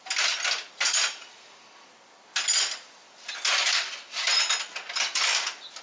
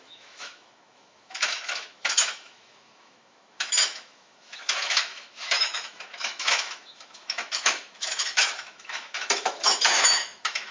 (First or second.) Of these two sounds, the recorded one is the first